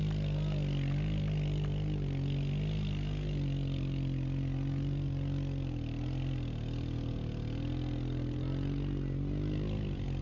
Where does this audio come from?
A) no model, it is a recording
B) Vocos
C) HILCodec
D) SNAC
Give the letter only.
A